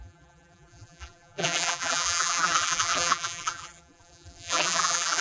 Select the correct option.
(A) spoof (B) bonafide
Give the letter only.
A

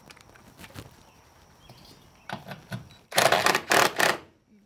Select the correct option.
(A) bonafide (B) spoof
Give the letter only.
A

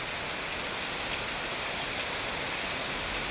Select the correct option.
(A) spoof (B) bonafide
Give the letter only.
B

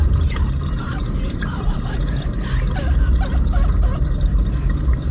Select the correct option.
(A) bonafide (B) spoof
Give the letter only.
B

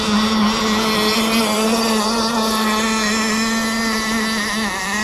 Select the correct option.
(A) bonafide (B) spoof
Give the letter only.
A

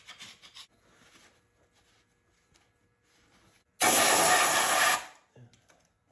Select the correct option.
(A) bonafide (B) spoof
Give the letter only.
A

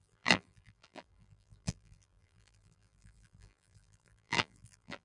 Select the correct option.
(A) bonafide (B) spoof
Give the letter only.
B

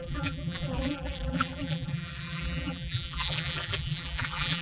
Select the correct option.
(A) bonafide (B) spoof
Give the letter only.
B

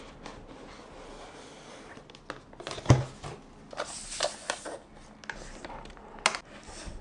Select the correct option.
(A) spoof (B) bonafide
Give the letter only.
B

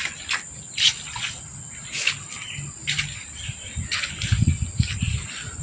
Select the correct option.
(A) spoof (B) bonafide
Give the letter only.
B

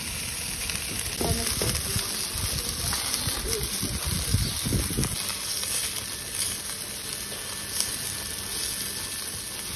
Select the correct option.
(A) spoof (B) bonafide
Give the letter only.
B